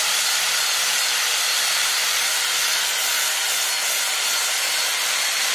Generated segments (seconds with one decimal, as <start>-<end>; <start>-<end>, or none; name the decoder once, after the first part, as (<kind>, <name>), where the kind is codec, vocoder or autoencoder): 0.0-2.6 (vocoder, BigVGAN v2); 4.9-5.5